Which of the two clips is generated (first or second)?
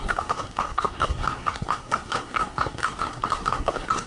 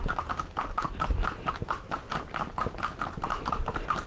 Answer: first